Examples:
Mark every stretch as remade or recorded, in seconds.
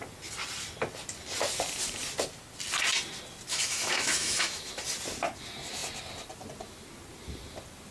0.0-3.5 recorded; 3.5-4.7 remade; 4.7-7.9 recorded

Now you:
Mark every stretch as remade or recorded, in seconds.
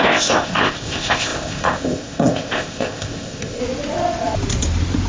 0.0-3.6 remade; 3.6-5.1 recorded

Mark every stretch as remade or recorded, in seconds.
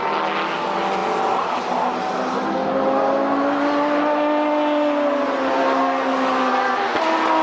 0.0-7.4 recorded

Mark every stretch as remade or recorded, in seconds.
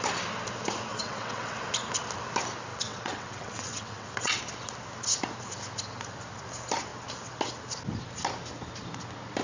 0.0-0.9 recorded; 0.9-1.6 remade; 1.6-2.7 recorded; 2.7-4.4 remade; 4.4-9.4 recorded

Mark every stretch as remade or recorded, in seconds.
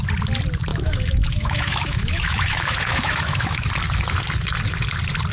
0.0-0.7 recorded; 0.7-3.7 remade; 3.7-5.3 recorded